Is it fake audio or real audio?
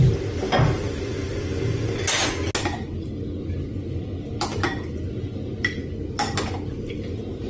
real